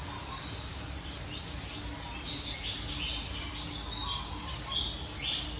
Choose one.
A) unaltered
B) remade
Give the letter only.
A